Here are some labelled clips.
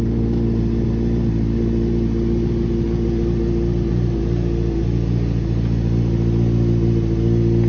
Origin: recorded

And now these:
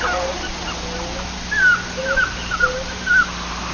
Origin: recorded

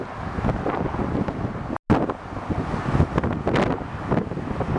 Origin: recorded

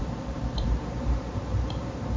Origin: remade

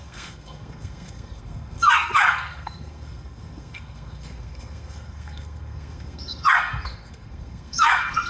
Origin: remade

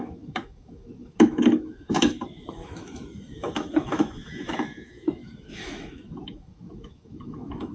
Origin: remade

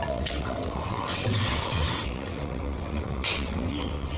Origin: remade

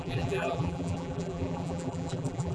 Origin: remade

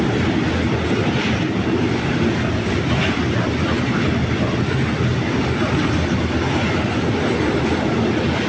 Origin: recorded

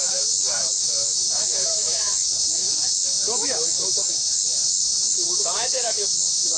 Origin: remade